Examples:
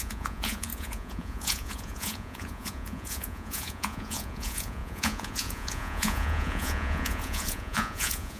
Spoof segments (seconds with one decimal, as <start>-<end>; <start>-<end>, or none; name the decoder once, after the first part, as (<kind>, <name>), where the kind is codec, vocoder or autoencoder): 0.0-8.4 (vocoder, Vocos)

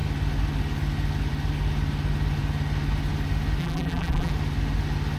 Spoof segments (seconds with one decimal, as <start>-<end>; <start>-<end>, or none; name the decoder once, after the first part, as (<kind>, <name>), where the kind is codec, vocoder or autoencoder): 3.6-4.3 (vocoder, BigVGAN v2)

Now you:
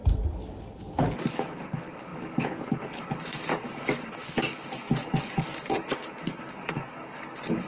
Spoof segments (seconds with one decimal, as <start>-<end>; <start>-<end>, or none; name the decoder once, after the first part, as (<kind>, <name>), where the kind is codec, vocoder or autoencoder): 1.3-7.7 (codec, DAC)

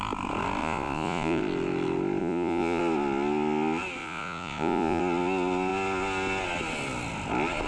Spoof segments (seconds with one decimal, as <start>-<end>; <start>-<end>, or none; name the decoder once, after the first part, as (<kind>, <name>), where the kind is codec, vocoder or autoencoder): 0.6-1.4 (vocoder, Vocos); 2.2-2.8; 4.0-5.0

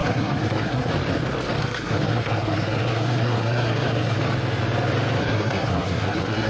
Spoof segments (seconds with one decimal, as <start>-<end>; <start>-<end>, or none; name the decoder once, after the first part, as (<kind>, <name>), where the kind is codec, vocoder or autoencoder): 0.0-0.9 (codec, SNAC); 1.6-4.2; 5.2-6.5

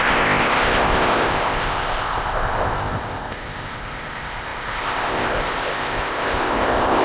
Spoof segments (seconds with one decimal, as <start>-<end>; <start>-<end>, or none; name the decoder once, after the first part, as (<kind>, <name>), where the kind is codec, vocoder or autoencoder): 0.0-7.0 (codec, ZipCodec)

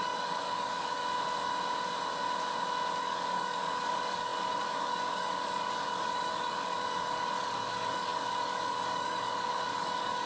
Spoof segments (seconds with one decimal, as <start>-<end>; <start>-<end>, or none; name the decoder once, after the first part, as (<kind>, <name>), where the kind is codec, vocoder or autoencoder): 0.0-1.0 (codec, DAC); 3.0-10.3